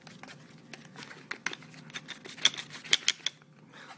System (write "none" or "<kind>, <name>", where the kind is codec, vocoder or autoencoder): none